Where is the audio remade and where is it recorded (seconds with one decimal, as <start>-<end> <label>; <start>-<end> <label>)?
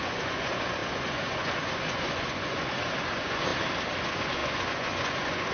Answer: 0.0-3.5 remade; 3.5-4.0 recorded; 4.0-5.5 remade